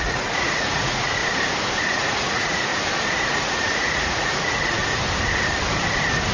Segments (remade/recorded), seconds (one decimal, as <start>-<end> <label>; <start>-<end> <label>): 0.0-1.2 remade; 1.2-1.8 recorded; 1.8-2.7 remade; 2.7-3.3 recorded; 3.3-4.8 remade; 4.8-6.3 recorded